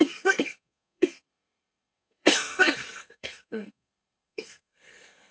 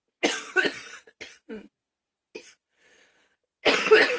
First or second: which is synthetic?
first